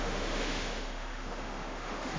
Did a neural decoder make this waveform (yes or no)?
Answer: yes